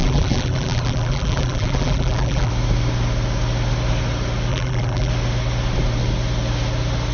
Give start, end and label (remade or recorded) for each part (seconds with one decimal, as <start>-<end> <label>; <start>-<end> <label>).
0.0-2.5 remade; 2.5-4.5 recorded; 4.5-5.1 remade; 5.1-7.1 recorded